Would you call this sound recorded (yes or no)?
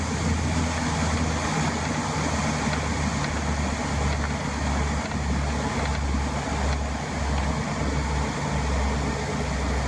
yes